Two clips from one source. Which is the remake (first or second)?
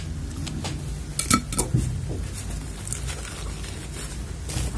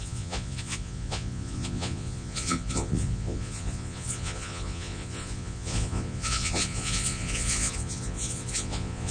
second